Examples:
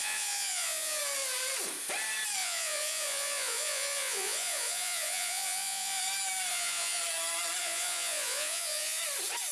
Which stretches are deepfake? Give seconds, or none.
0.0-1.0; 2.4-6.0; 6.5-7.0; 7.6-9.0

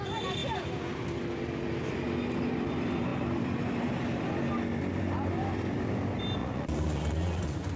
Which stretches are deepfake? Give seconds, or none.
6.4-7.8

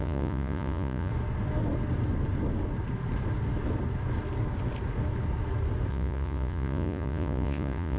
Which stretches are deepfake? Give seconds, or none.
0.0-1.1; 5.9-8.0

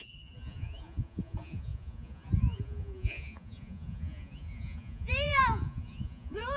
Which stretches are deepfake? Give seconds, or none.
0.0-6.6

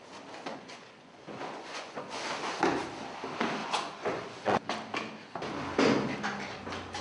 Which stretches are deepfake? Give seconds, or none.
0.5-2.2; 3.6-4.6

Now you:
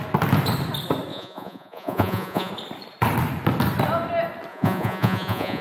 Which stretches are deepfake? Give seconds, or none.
1.1-2.5; 4.5-5.6